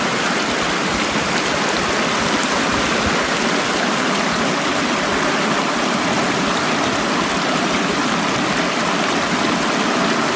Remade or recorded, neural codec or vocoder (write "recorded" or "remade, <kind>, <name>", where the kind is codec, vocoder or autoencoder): recorded